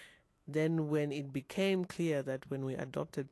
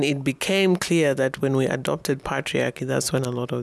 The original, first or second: second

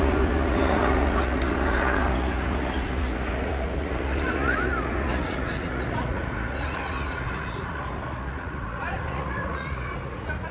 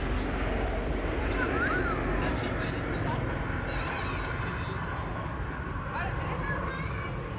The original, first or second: second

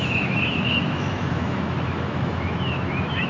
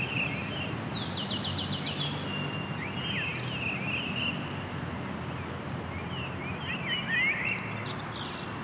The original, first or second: second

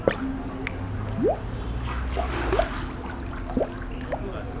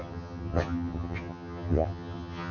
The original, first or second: first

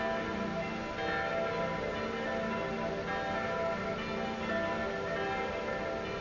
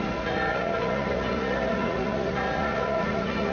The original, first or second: first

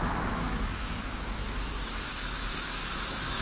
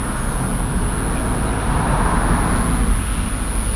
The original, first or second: second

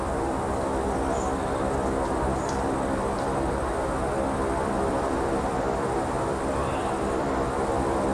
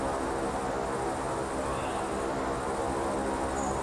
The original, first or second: second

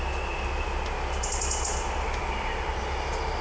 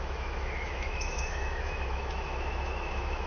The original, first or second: first